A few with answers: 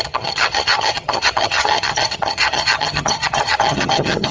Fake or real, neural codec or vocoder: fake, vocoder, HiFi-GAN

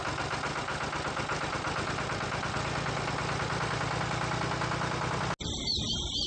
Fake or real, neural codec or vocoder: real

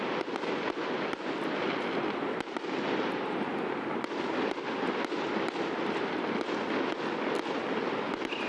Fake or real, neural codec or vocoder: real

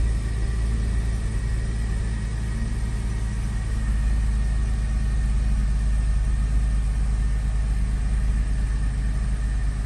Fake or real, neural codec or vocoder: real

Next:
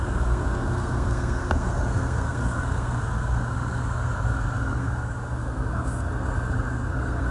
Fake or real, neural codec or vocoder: fake, codec, SNAC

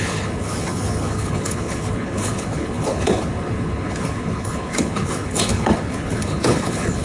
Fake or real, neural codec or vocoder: fake, codec, HILCodec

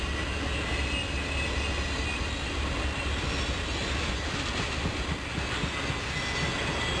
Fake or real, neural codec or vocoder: real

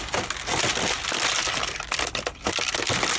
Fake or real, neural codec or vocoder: real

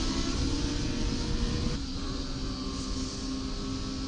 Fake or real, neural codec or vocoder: real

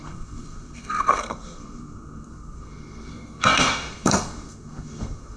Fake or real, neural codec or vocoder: fake, codec, SNAC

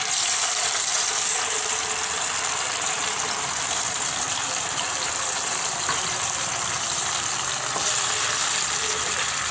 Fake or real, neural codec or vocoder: fake, vocoder, BigVGAN v2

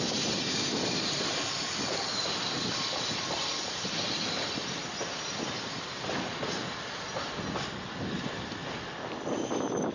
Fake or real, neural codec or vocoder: real